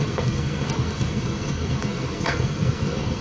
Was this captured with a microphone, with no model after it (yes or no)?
no